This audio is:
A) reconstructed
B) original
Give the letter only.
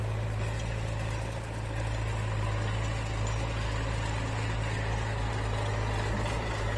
B